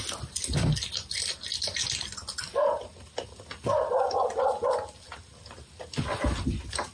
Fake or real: real